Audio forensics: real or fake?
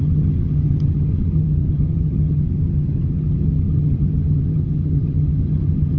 fake